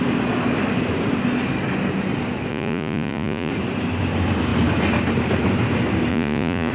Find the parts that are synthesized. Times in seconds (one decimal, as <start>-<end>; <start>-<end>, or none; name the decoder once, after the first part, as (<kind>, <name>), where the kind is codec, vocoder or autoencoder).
2.5-3.5 (vocoder, Vocos); 6.1-6.7